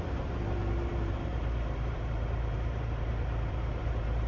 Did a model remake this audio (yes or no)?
yes